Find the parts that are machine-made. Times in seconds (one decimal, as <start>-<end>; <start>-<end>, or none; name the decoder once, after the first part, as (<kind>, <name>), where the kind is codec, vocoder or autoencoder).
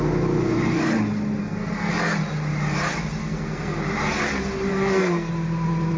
1.4-1.9 (codec, SNAC); 3.2-3.8; 4.7-5.3